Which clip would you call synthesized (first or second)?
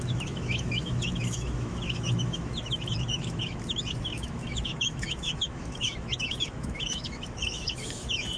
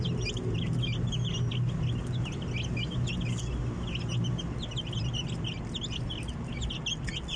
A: first